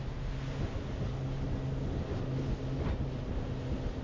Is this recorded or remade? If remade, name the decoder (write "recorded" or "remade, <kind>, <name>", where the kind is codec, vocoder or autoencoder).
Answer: recorded